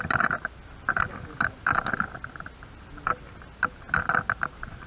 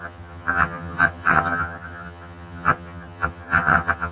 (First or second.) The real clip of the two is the first